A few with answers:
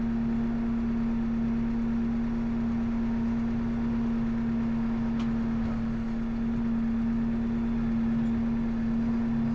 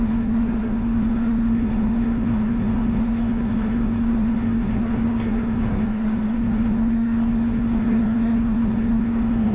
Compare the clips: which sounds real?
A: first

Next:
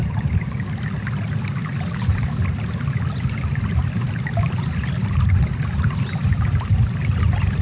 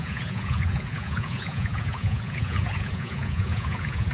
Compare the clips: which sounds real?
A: first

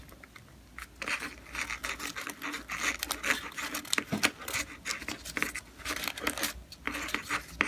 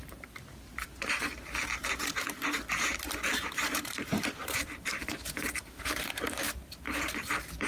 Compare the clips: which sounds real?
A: first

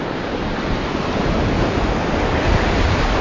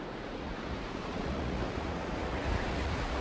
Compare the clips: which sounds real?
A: first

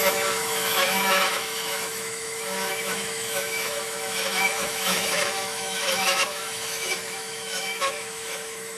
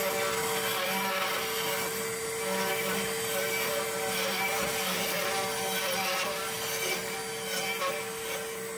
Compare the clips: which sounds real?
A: second